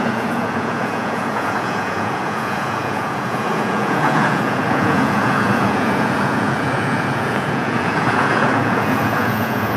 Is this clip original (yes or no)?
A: no